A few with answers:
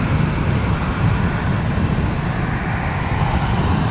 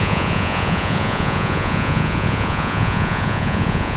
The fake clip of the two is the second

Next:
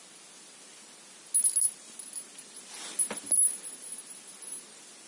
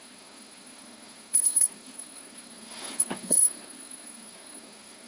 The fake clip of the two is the second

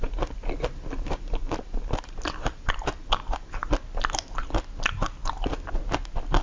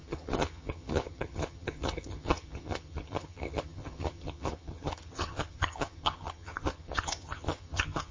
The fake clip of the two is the second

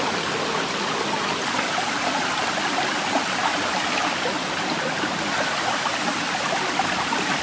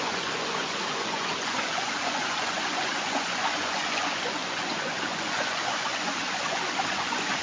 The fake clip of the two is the second